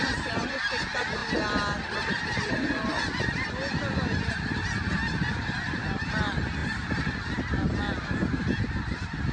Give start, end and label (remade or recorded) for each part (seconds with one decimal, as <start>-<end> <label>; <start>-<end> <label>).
0.0-6.6 recorded; 6.6-7.1 remade; 7.1-9.3 recorded